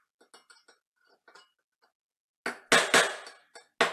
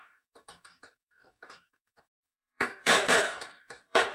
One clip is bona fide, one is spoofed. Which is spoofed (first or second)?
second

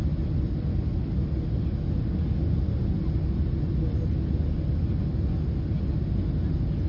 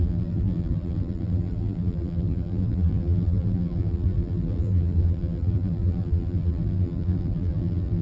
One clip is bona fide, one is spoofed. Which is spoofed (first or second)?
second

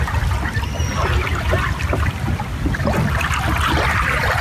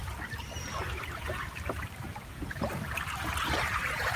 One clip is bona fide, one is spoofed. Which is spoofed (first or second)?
second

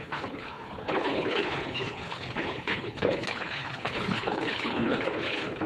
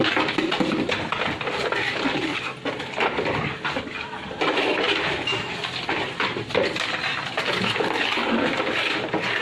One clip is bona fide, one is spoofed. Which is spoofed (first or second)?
first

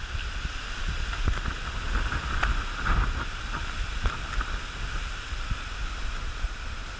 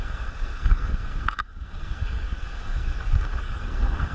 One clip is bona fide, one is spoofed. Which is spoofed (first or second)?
second